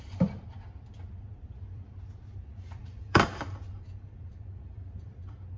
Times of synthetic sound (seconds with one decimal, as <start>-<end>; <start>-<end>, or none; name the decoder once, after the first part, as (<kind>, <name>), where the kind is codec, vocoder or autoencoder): 2.8-5.1 (vocoder, BigVGAN v2)